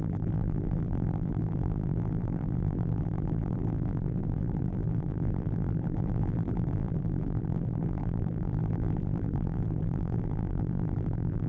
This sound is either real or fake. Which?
fake